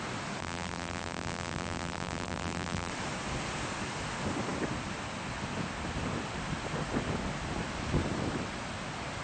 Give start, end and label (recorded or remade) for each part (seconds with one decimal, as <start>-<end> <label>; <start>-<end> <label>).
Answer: 0.0-0.4 recorded; 0.4-2.9 remade; 2.9-9.2 recorded